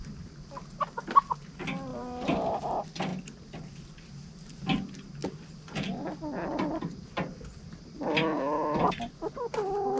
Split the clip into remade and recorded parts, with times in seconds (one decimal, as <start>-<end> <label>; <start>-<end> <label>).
0.0-1.9 recorded; 1.9-2.6 remade; 2.6-5.2 recorded; 5.2-8.0 remade; 8.0-10.0 recorded